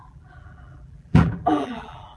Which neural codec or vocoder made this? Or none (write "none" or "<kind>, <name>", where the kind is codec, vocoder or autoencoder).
vocoder, BigVGAN v2